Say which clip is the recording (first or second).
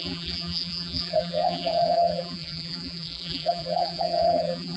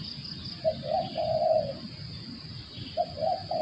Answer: second